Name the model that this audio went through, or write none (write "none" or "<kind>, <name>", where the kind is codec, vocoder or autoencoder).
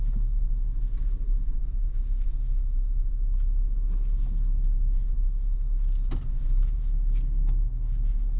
none